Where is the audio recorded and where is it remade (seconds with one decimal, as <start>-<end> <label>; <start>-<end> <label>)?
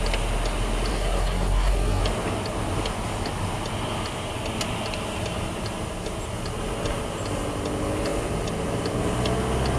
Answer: 0.0-0.9 recorded; 0.9-2.0 remade; 2.0-9.8 recorded